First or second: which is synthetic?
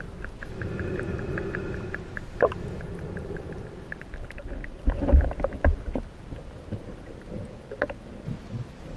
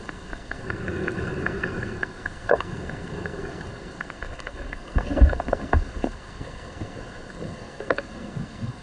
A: second